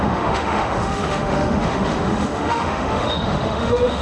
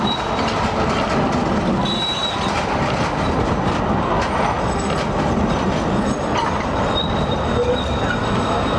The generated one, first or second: first